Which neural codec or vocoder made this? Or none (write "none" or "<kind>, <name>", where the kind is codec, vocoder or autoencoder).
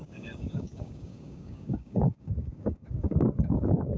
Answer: codec, DAC